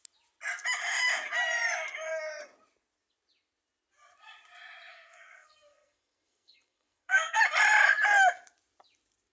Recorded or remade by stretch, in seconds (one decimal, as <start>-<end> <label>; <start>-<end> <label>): 0.0-4.9 recorded; 4.9-7.4 remade; 7.4-9.3 recorded